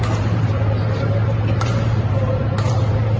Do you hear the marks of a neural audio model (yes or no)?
yes